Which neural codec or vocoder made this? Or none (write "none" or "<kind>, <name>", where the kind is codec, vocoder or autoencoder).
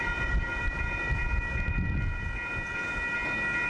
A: none